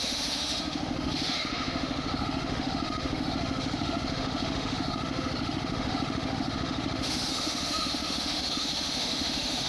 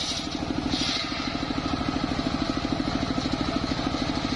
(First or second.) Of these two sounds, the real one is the second